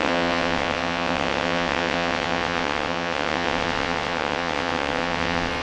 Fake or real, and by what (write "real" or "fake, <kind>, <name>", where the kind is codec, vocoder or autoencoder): fake, vocoder, WaveNeXt